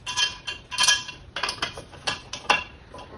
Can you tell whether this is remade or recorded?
recorded